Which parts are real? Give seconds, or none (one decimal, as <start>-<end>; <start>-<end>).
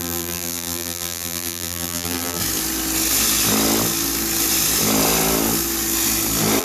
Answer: 2.4-6.6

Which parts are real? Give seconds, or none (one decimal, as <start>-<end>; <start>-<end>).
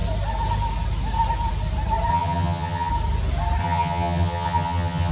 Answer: 0.0-2.1; 2.9-3.6